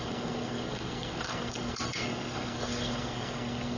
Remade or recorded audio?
remade